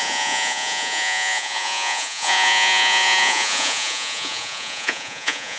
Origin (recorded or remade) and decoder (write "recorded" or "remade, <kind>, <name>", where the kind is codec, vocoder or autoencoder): remade, vocoder, Vocos